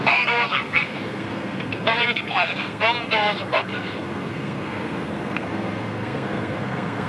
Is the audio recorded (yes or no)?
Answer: no